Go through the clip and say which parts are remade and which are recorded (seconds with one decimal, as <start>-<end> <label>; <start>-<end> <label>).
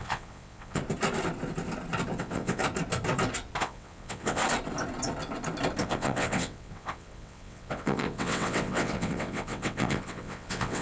0.0-0.8 remade; 0.8-2.2 recorded; 2.2-2.6 remade; 2.6-3.6 recorded; 3.6-4.4 remade; 4.4-5.8 recorded; 5.8-10.8 remade